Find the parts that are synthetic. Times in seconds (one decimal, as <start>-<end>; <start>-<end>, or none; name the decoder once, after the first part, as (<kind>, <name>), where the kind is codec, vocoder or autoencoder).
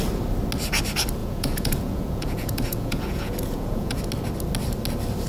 1.2-4.0 (vocoder, Vocos)